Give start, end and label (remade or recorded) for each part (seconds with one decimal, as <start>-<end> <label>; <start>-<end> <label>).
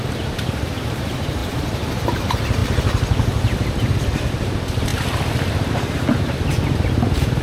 0.0-4.9 remade; 4.9-5.7 recorded; 5.7-7.4 remade